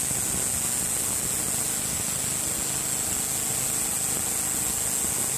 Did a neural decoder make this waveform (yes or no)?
no